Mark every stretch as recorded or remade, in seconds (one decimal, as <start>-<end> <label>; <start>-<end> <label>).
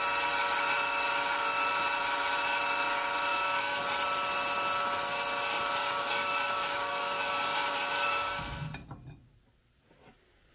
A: 0.0-3.3 recorded; 3.3-3.8 remade; 3.8-5.8 recorded; 5.8-8.4 remade; 8.4-10.5 recorded